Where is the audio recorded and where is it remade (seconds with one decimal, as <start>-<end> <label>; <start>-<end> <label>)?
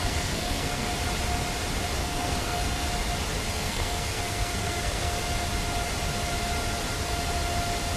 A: 0.0-0.9 remade; 0.9-2.0 recorded; 2.0-2.9 remade; 2.9-3.5 recorded; 3.5-5.2 remade; 5.2-8.0 recorded